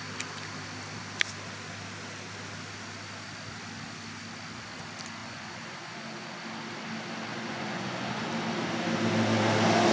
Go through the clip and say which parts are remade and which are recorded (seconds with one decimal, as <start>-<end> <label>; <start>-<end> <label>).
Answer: 0.0-5.2 recorded; 5.2-6.4 remade; 6.4-7.3 recorded; 7.3-8.3 remade; 8.3-9.9 recorded